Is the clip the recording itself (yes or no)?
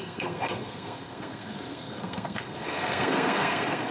no